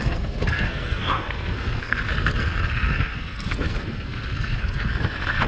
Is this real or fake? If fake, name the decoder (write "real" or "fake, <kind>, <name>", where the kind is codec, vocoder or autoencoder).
fake, codec, SNAC